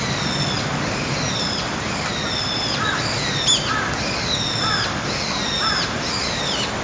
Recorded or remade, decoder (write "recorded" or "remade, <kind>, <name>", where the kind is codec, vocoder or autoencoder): recorded